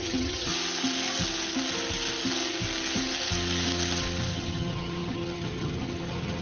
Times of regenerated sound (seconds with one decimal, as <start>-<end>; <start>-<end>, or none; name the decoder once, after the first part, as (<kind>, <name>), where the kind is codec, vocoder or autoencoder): 0.0-0.5 (vocoder, HiFi-GAN); 4.3-6.4